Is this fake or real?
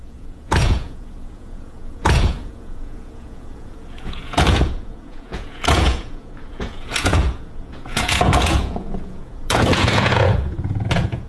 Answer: fake